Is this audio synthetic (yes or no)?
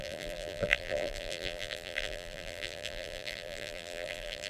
yes